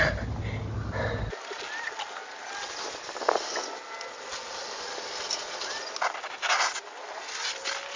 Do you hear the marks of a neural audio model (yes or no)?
no